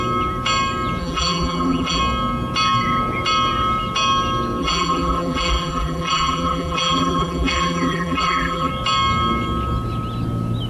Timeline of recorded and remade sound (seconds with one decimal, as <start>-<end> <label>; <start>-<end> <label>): 0.0-1.0 recorded; 1.0-2.0 remade; 2.0-4.6 recorded; 4.6-8.7 remade; 8.7-10.7 recorded

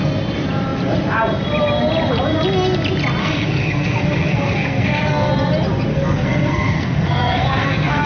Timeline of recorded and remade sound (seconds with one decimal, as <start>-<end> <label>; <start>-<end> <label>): 0.0-3.2 recorded; 3.2-5.3 remade; 5.3-5.9 recorded; 5.9-8.1 remade

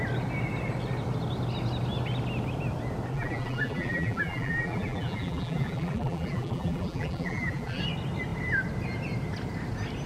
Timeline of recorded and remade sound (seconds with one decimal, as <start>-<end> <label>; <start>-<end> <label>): 0.0-3.1 recorded; 3.1-7.8 remade; 7.8-10.1 recorded

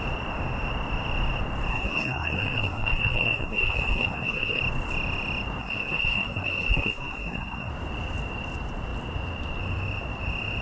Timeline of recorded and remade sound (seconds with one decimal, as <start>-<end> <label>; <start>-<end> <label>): 0.0-1.7 recorded; 1.7-4.6 remade; 4.6-5.6 recorded; 5.6-7.7 remade; 7.7-10.6 recorded

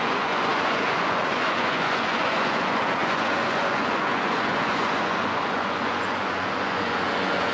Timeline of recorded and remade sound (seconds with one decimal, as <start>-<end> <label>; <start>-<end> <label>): 0.0-7.5 remade